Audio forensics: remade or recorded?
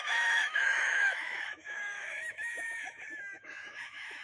remade